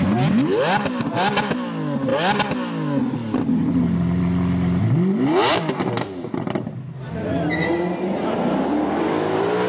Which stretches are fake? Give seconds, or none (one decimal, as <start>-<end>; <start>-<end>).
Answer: none